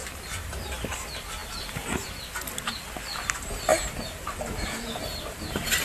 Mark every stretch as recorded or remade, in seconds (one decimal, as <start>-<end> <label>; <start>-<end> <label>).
0.0-5.8 recorded

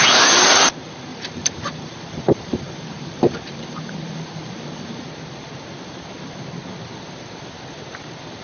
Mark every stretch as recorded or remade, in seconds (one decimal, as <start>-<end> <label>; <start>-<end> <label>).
0.0-1.1 recorded; 1.1-5.1 remade; 5.1-8.4 recorded